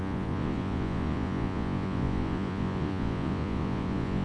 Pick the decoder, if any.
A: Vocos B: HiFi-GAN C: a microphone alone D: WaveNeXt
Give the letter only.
A